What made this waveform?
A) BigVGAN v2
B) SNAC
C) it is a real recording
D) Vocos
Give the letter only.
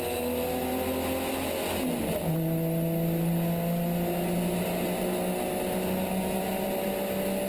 C